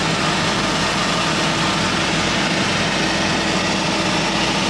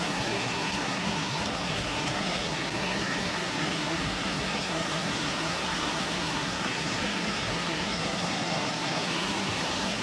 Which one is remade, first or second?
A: second